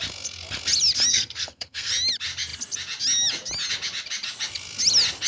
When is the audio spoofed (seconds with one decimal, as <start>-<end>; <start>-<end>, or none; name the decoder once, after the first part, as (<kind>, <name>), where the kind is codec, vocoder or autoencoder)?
1.1-1.9 (codec, SNAC)